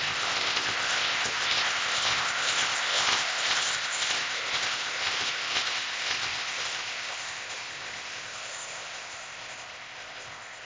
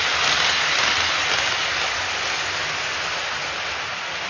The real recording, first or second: second